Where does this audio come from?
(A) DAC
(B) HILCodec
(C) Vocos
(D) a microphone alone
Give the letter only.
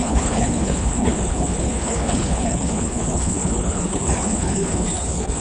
B